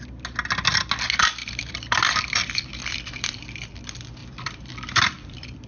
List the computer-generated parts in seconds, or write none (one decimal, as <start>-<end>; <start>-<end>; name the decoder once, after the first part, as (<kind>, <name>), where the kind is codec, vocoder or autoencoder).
1.4-3.8 (vocoder, BigVGAN v2); 4.2-5.7